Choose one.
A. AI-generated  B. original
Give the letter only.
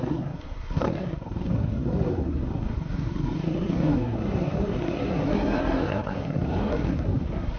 A